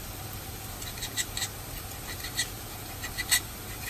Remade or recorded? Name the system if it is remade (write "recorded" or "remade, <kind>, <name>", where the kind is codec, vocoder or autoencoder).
recorded